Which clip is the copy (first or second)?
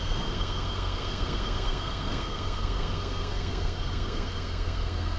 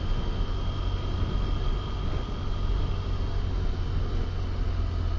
first